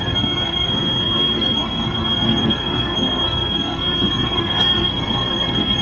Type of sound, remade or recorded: remade